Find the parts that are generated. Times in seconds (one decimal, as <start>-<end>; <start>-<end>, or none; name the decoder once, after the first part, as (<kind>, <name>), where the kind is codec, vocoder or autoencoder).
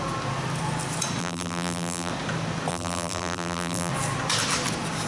1.2-2.1 (vocoder, BigVGAN v2); 2.7-3.9